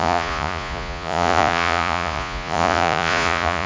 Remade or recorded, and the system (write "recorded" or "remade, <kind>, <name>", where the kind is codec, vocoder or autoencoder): remade, vocoder, Vocos